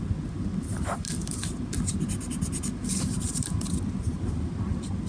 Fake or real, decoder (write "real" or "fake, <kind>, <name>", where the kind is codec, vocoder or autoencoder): real